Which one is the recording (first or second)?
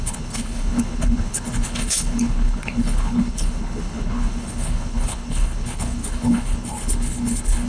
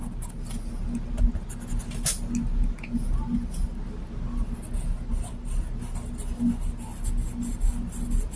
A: second